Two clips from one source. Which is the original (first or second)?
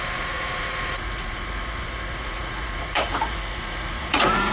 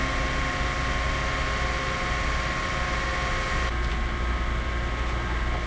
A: second